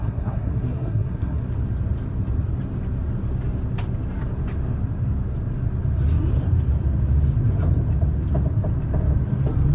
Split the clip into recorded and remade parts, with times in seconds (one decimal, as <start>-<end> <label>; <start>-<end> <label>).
0.0-1.4 remade; 1.4-9.7 recorded